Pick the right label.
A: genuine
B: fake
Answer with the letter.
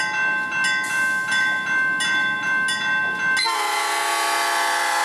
A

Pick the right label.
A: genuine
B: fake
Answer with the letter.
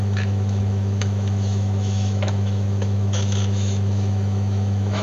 B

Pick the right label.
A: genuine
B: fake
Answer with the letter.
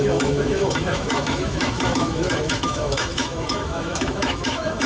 B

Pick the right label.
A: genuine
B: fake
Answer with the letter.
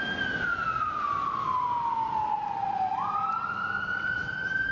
A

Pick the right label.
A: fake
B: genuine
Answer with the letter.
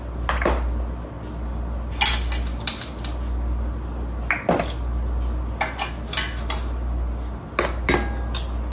B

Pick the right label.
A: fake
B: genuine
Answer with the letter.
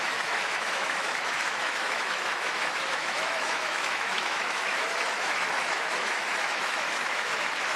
A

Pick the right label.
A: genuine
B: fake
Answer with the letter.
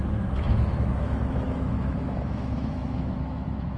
B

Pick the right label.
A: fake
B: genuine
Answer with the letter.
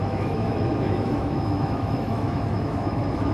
A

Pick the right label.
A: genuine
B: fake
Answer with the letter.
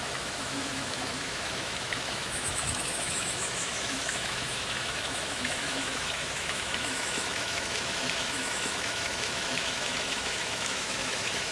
B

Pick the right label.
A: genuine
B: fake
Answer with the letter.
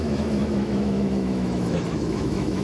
B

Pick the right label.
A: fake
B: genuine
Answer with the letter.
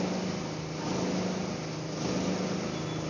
B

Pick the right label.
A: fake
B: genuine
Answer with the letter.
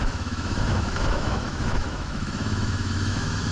A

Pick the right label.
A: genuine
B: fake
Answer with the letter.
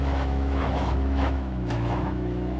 B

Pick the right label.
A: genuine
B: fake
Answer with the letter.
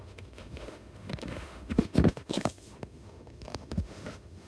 B